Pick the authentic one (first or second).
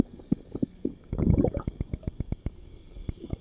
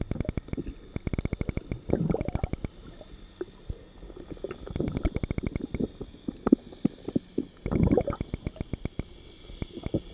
second